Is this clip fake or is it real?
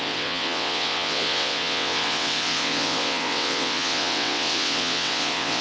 fake